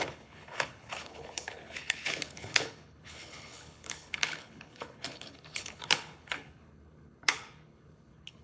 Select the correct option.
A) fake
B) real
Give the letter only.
A